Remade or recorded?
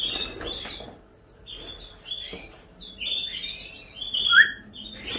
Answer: recorded